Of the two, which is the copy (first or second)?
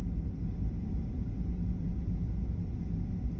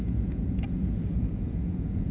second